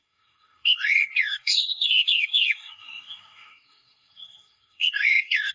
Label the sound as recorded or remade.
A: remade